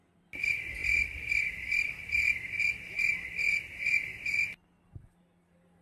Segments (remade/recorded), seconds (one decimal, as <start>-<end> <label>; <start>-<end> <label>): 0.0-0.8 recorded; 0.8-2.6 remade; 2.6-5.8 recorded